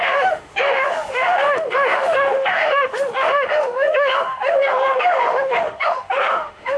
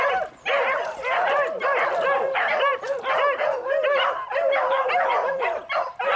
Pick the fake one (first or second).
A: first